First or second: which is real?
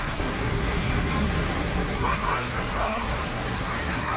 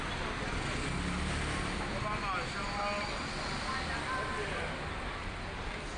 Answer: second